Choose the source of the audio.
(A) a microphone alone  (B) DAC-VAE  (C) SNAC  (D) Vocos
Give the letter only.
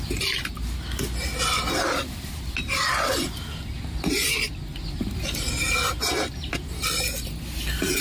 A